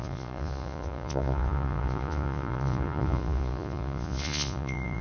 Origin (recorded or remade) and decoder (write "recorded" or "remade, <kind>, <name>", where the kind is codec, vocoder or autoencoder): remade, vocoder, Vocos